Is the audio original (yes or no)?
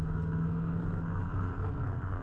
no